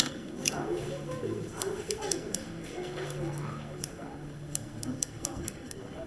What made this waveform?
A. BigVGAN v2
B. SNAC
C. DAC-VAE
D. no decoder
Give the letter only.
B